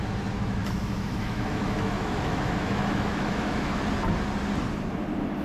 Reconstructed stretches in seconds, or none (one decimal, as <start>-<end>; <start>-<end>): 0.6-3.8